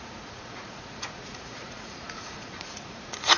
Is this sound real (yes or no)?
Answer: no